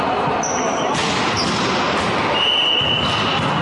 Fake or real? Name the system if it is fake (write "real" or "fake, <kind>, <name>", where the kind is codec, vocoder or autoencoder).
real